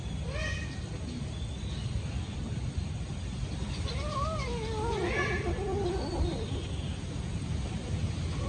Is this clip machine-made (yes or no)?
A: no